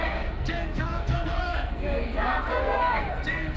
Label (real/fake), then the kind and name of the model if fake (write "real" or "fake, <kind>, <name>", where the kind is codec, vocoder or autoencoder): fake, codec, SNAC